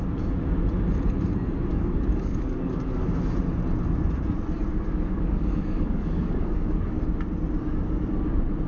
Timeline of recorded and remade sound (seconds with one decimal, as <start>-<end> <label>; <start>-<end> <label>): 0.0-1.7 recorded; 1.7-3.2 remade; 3.2-4.7 recorded; 4.7-7.0 remade; 7.0-8.7 recorded